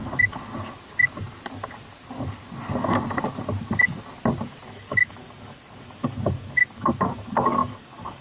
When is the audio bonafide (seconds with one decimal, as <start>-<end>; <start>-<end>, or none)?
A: 0.0-4.7